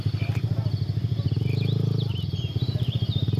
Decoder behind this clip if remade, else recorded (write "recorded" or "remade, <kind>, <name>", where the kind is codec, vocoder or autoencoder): recorded